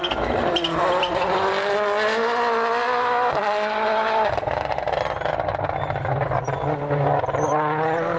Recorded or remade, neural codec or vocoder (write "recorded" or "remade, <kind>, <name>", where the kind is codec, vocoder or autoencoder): recorded